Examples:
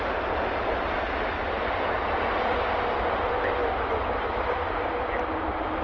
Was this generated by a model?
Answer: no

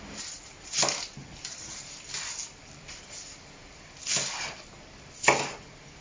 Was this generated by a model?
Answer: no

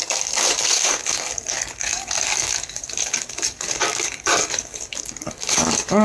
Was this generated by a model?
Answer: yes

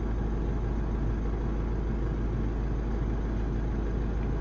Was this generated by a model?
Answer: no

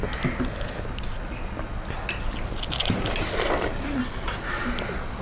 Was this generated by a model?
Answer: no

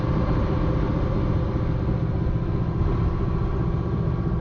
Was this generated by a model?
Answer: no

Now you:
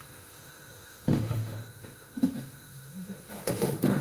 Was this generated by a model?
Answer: yes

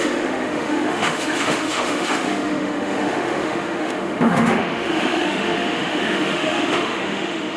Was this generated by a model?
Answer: yes